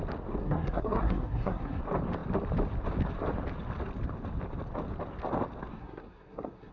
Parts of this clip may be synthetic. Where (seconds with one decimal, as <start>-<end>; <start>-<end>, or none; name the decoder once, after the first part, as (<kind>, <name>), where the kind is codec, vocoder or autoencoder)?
0.4-1.8 (codec, SNAC); 5.7-6.7